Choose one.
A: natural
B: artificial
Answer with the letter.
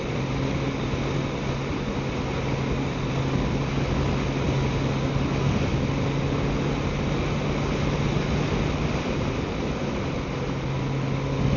A